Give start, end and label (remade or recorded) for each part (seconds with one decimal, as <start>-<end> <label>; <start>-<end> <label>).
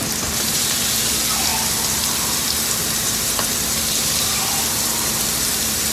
0.0-5.9 remade